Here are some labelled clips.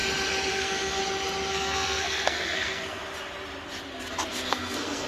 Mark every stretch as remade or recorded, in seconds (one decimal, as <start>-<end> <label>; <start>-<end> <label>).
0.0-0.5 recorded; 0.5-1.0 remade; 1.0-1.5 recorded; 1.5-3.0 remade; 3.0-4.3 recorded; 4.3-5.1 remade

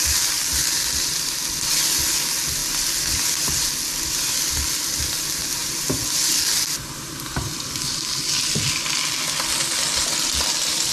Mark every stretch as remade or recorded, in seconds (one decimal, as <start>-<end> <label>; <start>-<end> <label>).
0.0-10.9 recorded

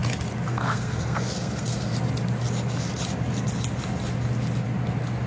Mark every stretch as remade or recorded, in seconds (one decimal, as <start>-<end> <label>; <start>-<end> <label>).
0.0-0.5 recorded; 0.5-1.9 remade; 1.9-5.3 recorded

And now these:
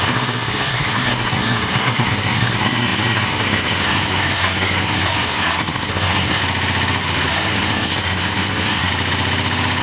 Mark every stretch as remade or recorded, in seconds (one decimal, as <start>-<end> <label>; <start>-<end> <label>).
0.0-6.4 remade; 6.4-7.3 recorded; 7.3-8.9 remade; 8.9-9.8 recorded

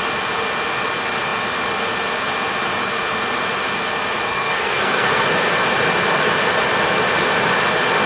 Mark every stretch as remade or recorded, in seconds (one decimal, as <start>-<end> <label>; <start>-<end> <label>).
0.0-4.3 recorded; 4.3-5.2 remade; 5.2-8.1 recorded